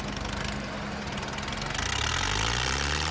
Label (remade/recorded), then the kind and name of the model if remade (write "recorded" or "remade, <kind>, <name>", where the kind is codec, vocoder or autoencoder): recorded